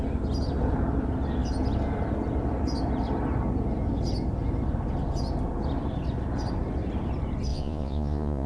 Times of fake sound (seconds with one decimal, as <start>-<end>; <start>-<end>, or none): 7.5-8.5